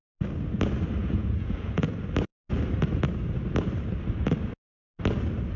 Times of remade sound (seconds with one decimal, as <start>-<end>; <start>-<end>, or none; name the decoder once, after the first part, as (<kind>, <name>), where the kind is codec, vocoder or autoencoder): 1.0-1.9 (vocoder, Vocos)